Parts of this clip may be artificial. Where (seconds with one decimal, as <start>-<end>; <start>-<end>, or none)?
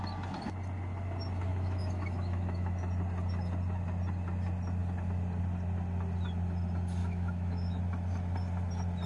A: 1.5-2.9; 7.0-7.8